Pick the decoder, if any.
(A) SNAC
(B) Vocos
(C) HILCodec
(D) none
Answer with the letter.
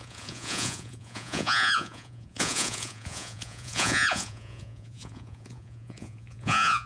B